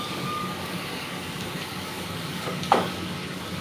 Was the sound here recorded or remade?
remade